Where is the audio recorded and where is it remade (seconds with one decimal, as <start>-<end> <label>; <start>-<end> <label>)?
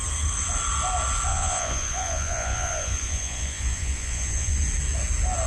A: 0.0-1.3 recorded; 1.3-4.6 remade; 4.6-5.5 recorded